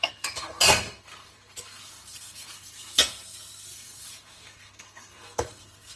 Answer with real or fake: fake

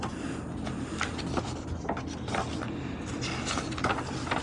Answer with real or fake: real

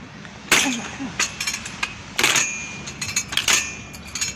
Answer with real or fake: real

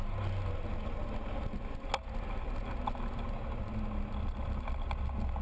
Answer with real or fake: real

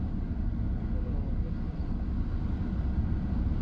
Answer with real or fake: real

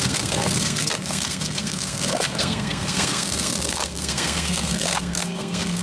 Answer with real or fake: fake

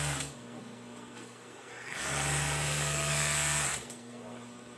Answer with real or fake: fake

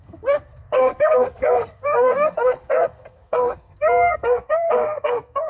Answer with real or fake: fake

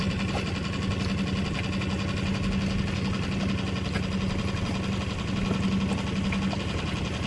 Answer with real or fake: real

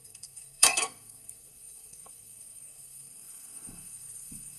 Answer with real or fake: fake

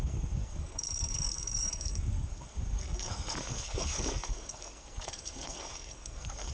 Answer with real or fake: fake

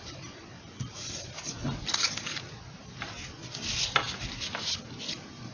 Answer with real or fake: real